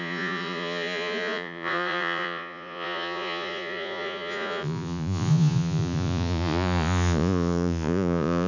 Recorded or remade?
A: remade